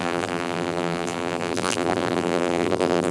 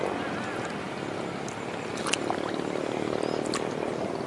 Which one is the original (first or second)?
second